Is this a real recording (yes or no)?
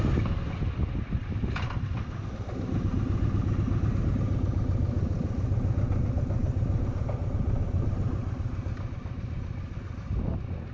yes